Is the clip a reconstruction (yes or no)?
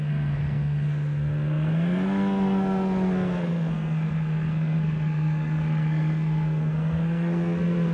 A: yes